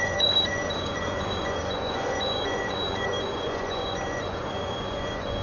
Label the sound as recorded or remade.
remade